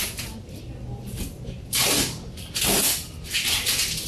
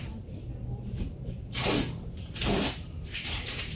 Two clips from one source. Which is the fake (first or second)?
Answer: second